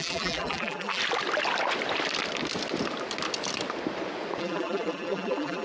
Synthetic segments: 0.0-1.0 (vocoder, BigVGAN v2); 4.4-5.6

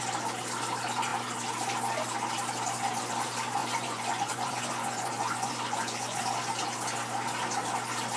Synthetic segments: 3.6-6.2 (vocoder, Vocos)

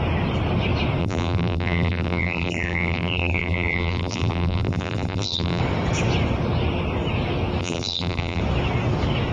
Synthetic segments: 1.0-5.6 (vocoder, BigVGAN v2); 7.6-8.4

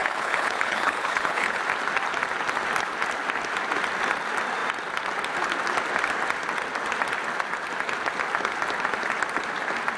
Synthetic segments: 0.0-1.6 (codec, HILCodec)

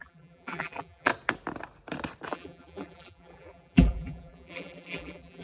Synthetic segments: 0.0-1.1 (vocoder, BigVGAN v2); 2.3-5.4

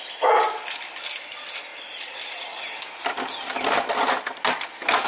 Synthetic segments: none